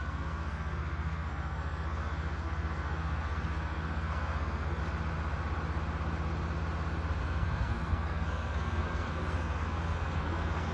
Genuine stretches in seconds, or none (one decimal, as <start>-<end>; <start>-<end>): 4.8-7.2